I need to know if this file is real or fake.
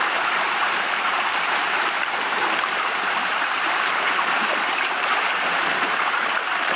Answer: fake